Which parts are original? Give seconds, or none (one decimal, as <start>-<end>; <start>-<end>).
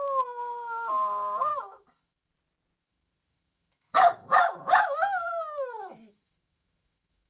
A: 0.0-1.5; 2.3-2.8